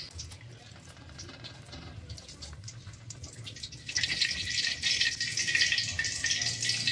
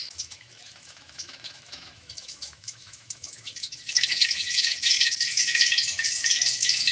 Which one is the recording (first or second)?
first